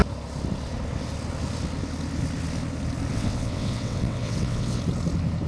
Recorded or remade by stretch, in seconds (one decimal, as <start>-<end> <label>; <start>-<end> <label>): 0.0-3.1 recorded; 3.1-4.8 remade; 4.8-5.5 recorded